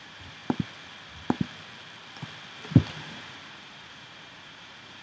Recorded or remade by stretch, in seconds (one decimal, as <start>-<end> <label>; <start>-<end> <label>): 0.0-0.4 remade; 0.4-2.9 recorded; 2.9-5.0 remade